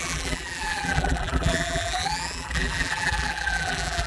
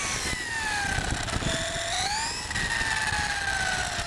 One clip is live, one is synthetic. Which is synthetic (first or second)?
first